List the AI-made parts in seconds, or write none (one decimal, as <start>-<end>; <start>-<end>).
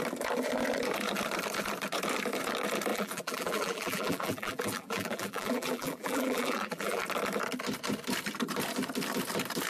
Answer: 2.9-7.0